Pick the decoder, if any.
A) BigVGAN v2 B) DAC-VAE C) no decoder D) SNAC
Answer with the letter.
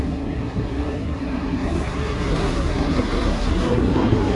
D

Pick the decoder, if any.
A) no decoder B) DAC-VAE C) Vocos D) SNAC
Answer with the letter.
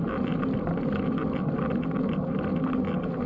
A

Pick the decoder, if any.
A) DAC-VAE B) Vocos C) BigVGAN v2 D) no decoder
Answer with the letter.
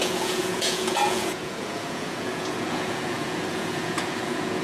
B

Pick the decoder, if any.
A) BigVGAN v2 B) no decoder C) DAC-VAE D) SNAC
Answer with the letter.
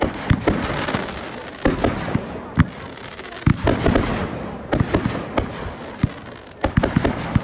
B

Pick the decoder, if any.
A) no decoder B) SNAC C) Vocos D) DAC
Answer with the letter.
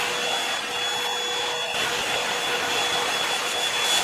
A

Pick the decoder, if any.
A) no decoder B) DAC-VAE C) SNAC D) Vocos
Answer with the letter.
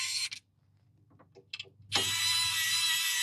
A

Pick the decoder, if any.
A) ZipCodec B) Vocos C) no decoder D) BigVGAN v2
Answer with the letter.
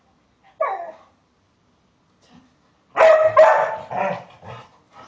C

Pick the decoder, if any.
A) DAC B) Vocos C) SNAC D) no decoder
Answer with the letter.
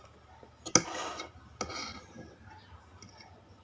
D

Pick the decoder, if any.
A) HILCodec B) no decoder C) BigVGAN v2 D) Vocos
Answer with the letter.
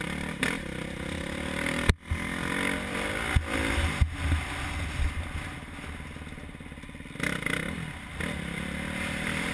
B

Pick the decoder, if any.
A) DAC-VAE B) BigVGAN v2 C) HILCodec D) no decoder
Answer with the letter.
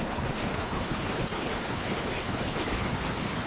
C